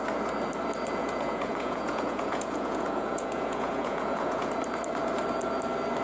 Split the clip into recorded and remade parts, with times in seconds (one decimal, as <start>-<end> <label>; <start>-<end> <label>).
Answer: 0.0-1.0 recorded; 1.0-4.5 remade; 4.5-6.0 recorded